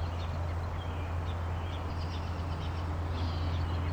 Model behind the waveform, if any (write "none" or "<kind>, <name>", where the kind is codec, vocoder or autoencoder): none